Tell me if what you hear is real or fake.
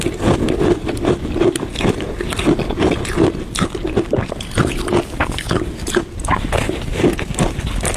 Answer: real